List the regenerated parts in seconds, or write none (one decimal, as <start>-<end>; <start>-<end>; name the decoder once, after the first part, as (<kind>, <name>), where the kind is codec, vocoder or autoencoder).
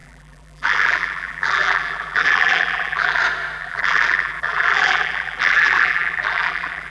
0.0-3.2 (vocoder, BigVGAN v2); 3.6-6.9